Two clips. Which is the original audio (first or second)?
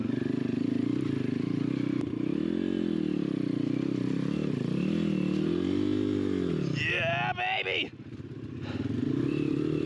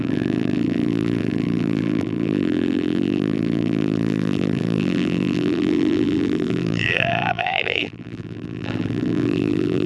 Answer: first